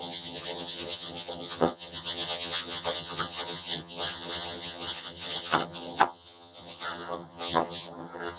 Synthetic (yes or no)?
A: yes